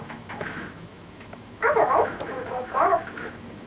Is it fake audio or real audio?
fake